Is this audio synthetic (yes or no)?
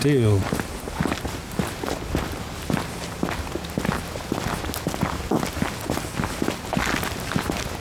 no